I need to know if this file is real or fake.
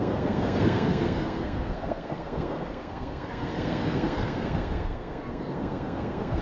fake